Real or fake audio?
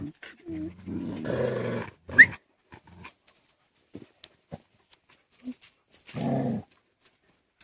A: real